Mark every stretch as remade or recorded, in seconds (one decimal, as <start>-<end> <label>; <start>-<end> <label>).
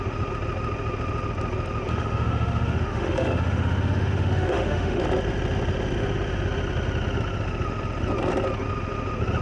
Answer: 0.0-1.9 recorded; 1.9-5.0 remade; 5.0-9.4 recorded